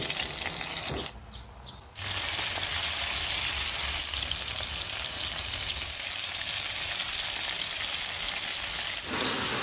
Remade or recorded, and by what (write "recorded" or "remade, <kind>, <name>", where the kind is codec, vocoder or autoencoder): recorded